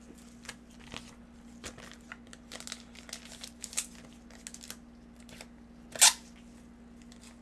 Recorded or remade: recorded